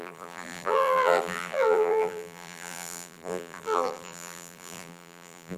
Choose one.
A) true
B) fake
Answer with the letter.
B